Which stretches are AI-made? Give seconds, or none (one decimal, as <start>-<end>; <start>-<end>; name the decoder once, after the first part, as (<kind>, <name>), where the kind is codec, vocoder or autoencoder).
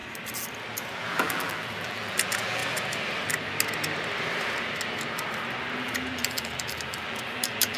0.9-2.6 (vocoder, BigVGAN v2); 5.8-7.8